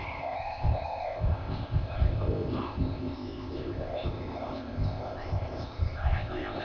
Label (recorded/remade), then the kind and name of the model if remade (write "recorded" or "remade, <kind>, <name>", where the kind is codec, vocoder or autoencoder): remade, codec, ZipCodec